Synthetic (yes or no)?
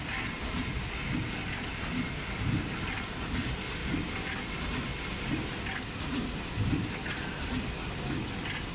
no